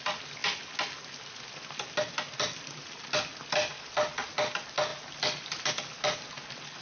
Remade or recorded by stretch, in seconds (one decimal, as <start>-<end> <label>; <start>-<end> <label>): 0.0-6.8 recorded